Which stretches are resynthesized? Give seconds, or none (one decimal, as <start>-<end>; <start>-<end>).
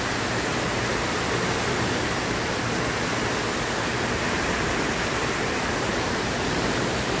0.0-2.2; 5.1-7.2